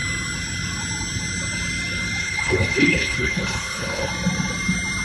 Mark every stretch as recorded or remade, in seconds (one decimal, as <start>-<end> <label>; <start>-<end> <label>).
0.0-2.2 recorded; 2.2-4.1 remade; 4.1-5.0 recorded